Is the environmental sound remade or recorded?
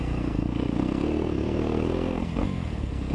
remade